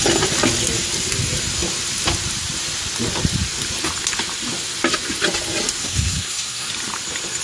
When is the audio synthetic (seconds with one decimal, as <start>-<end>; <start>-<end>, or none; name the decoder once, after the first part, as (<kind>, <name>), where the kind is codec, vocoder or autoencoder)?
5.8-6.7 (codec, SNAC)